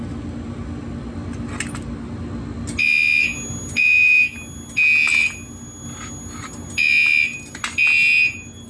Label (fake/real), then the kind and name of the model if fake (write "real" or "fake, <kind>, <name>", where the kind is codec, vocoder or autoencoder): real